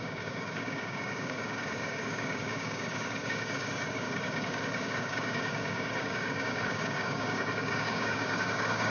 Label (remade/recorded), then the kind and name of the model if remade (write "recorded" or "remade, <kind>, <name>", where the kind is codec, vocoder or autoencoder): remade, codec, DAC